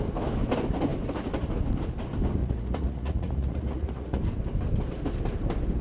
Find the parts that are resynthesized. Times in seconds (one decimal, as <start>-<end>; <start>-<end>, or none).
2.4-4.2